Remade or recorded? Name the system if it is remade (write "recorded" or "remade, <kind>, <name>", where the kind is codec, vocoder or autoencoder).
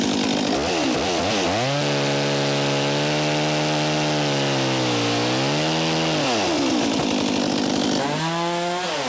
recorded